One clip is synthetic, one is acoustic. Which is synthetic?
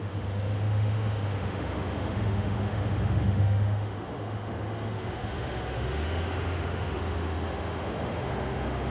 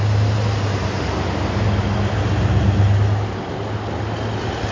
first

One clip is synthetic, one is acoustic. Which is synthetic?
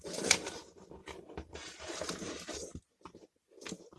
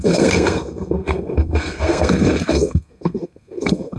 second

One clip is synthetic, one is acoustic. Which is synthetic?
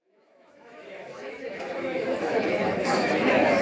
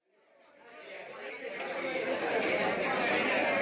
first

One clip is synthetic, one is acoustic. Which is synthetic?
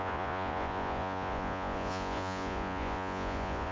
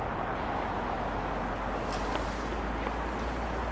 first